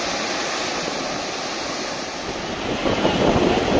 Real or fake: real